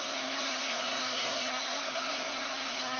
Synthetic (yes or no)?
yes